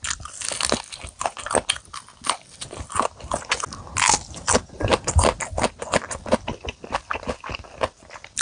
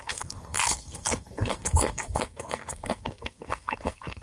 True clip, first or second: first